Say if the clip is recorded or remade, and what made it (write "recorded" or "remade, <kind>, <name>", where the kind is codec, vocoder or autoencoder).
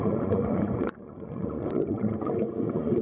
remade, vocoder, Vocos